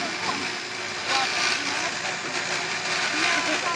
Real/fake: real